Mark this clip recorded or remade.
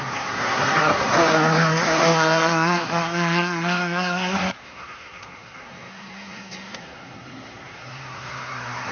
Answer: remade